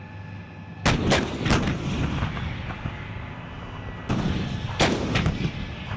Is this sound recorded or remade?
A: recorded